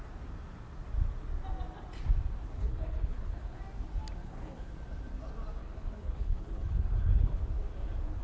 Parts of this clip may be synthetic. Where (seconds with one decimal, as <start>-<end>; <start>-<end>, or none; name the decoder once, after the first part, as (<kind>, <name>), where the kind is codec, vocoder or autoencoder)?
2.6-3.6 (codec, HILCodec); 4.2-4.7; 5.6-7.4

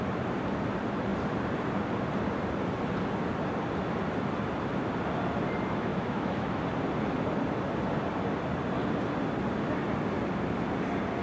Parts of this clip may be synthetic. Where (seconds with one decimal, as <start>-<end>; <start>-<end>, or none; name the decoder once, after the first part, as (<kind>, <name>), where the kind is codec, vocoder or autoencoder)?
5.9-6.6 (autoencoder, DAC-VAE)